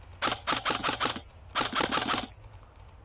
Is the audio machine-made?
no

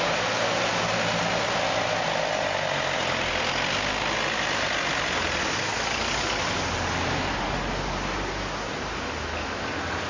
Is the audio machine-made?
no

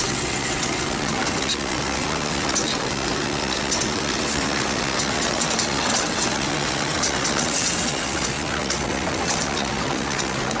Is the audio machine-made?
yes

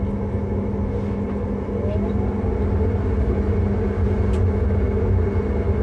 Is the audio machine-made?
no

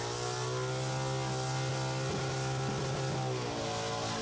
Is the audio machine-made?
no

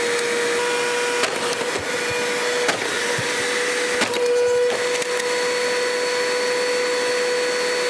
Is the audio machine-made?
no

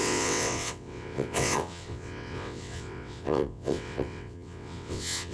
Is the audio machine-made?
yes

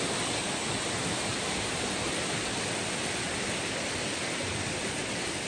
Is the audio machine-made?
no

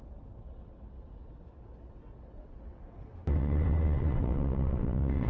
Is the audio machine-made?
yes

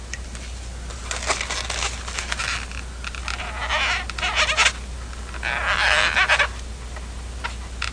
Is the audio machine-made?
no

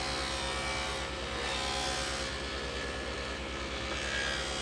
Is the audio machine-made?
no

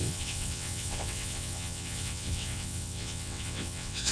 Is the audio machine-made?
yes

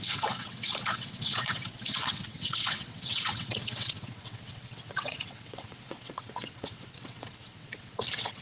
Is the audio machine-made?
yes